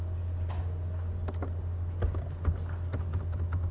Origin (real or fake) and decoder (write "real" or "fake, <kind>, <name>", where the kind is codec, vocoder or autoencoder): real